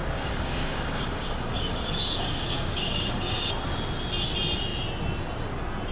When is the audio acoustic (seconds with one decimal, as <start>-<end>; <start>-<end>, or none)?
3.5-5.9